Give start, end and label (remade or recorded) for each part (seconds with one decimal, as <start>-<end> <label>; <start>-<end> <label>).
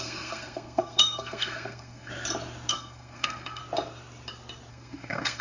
0.0-2.1 remade; 2.1-2.7 recorded; 2.7-3.6 remade; 3.6-4.7 recorded; 4.7-5.4 remade